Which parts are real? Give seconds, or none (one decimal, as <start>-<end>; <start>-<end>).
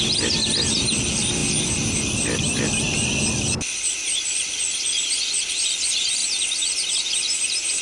6.2-6.9